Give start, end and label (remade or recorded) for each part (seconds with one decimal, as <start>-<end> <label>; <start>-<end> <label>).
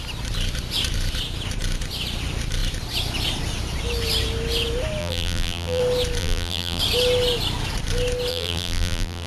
0.0-5.0 recorded; 5.0-5.8 remade; 5.8-6.2 recorded; 6.2-6.8 remade; 6.8-8.3 recorded; 8.3-9.3 remade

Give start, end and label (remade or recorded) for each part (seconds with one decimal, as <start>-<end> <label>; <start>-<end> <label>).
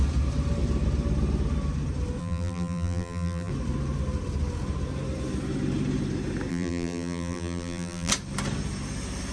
0.0-2.2 recorded; 2.2-3.5 remade; 3.5-6.5 recorded; 6.5-8.1 remade; 8.1-9.3 recorded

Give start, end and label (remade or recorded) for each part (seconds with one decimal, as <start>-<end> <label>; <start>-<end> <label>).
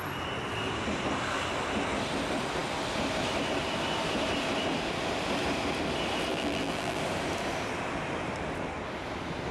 0.0-6.3 recorded; 6.3-7.0 remade; 7.0-9.5 recorded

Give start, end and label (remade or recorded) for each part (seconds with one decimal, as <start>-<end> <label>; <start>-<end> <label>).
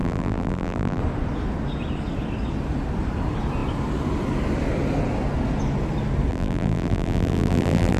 0.0-1.0 remade; 1.0-6.3 recorded; 6.3-8.0 remade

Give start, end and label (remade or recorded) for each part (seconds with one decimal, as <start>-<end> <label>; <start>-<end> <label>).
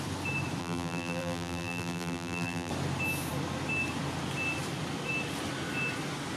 0.0-0.6 recorded; 0.6-2.7 remade; 2.7-6.4 recorded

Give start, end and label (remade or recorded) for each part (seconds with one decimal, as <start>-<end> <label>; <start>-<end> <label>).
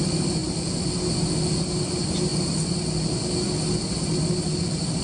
0.0-5.0 recorded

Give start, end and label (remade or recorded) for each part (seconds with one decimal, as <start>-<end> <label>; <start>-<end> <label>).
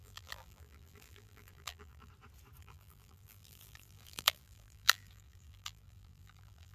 0.0-2.1 remade; 2.1-2.6 recorded; 2.6-6.7 remade